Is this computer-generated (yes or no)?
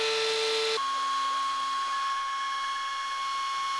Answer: no